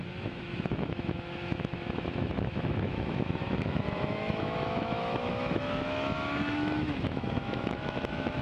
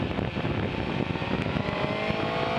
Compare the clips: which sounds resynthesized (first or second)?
first